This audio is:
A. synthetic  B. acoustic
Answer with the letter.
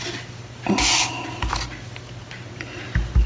B